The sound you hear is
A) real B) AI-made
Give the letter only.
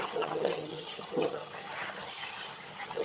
B